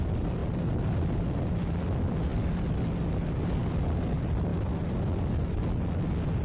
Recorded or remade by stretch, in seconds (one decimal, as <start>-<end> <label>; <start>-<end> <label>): 0.0-6.4 recorded